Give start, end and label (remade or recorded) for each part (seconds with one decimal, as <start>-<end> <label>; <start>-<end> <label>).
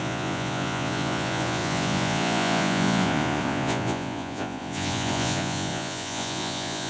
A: 0.0-6.9 remade